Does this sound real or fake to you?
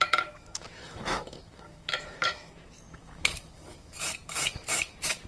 fake